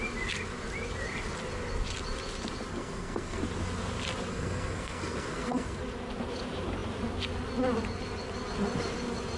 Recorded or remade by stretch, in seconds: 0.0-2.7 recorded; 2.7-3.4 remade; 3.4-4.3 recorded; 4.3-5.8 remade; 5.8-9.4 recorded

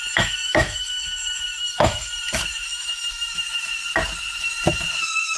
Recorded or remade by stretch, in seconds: 0.0-3.8 remade; 3.8-4.4 recorded; 4.4-5.4 remade

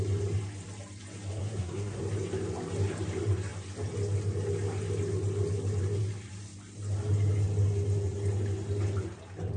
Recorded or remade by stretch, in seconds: 0.0-1.4 recorded; 1.4-2.0 remade; 2.0-9.6 recorded

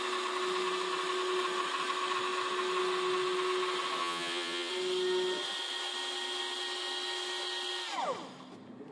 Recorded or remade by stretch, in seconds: 0.0-4.0 recorded; 4.0-4.7 remade; 4.7-8.9 recorded